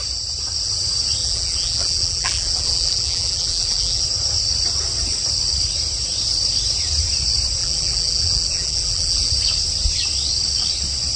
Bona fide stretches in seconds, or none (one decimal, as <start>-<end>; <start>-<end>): 0.0-1.2; 4.0-7.6; 9.3-11.2